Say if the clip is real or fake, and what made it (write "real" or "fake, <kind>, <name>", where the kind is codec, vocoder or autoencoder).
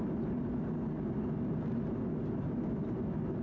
real